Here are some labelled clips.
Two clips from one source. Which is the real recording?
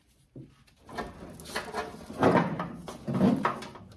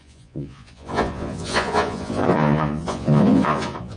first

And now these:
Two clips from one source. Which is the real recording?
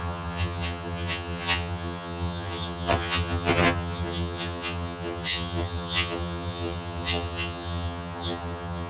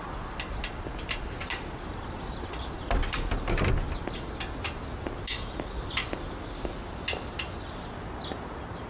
second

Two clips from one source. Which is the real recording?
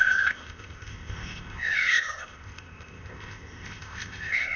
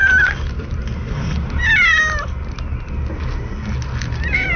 second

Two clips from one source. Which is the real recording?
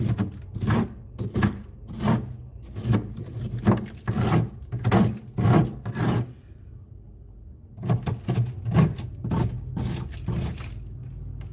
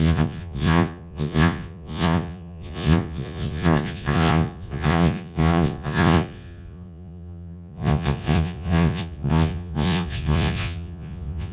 first